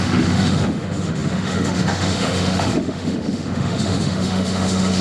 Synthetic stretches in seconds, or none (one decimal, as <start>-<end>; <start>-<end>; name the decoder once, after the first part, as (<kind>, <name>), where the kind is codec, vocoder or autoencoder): 0.0-5.0 (autoencoder, DAC-VAE)